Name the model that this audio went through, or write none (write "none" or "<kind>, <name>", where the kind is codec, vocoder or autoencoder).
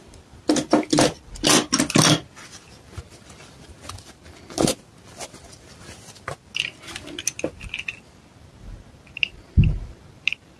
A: none